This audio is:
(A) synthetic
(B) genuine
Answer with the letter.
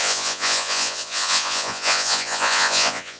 A